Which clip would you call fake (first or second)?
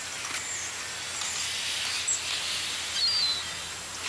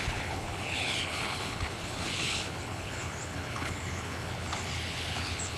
second